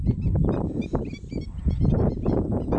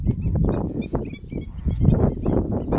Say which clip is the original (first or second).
second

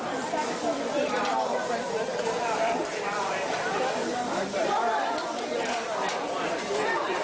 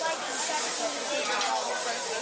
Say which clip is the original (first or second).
second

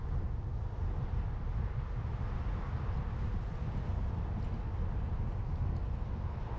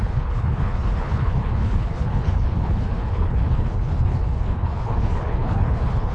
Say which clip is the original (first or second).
first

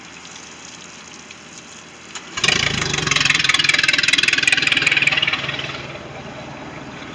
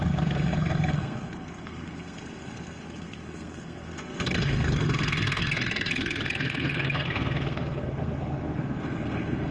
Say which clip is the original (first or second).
first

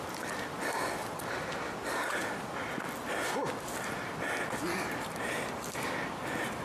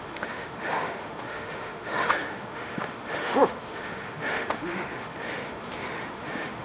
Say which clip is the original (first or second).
first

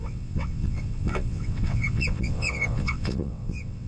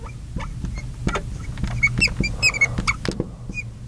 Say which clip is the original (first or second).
second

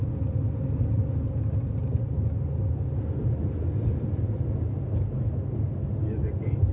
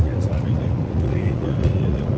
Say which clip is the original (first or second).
first